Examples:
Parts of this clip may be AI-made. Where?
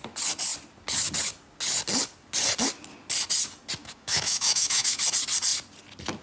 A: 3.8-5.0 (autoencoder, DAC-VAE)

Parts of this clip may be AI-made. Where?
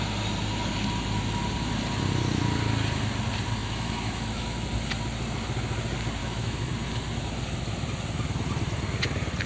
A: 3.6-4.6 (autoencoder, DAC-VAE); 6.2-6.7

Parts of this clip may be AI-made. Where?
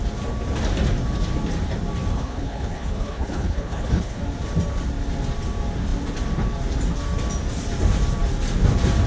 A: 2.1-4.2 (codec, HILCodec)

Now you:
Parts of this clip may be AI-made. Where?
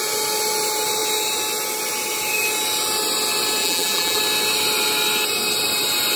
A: 3.6-4.2 (vocoder, BigVGAN v2)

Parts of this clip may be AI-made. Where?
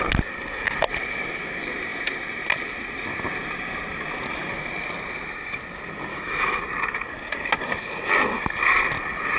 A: 6.1-6.6 (autoencoder, DAC-VAE)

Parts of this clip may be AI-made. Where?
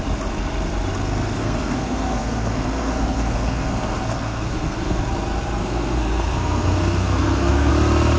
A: 1.4-5.0 (codec, SNAC); 5.6-7.7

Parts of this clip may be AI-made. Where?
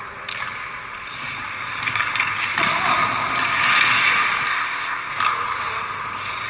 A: 4.5-5.1 (codec, ZipCodec)